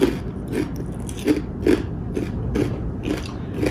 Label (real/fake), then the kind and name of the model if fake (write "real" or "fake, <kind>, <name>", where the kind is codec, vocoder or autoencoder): real